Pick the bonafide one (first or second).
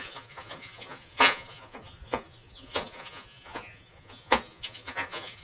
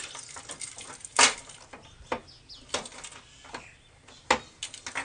second